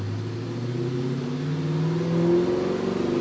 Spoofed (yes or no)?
no